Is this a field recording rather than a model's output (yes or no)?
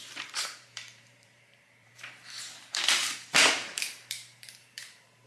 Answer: no